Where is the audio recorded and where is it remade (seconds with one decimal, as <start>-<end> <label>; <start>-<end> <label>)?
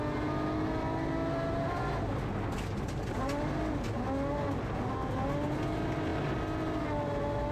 0.0-7.5 recorded